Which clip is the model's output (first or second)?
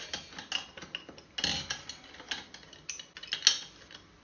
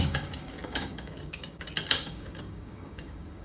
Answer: second